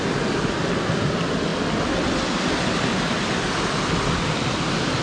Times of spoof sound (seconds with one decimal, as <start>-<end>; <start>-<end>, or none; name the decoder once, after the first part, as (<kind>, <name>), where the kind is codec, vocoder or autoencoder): none